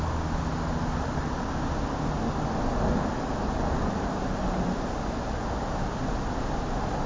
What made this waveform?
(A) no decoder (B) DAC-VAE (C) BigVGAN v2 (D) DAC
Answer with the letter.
A